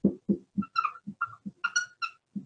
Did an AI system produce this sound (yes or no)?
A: no